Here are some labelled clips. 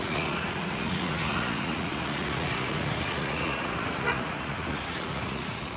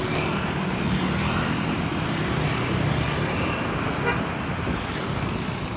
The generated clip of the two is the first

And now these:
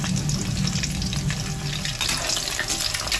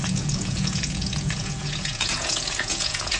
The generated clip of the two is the second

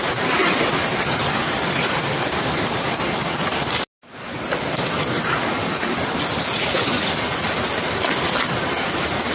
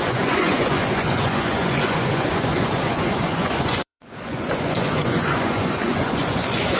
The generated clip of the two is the second